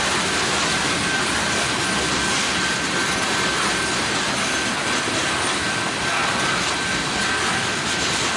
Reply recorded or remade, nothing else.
recorded